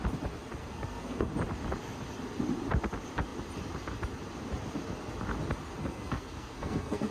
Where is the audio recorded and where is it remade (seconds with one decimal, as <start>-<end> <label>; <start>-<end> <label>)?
0.0-0.6 recorded; 0.6-1.3 remade; 1.3-5.8 recorded; 5.8-7.1 remade